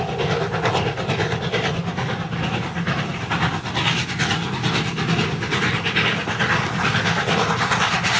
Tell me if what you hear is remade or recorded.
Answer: recorded